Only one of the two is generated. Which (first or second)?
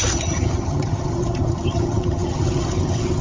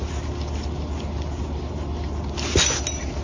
first